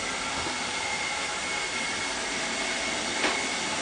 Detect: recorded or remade recorded